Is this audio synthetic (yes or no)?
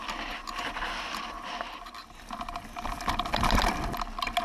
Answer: no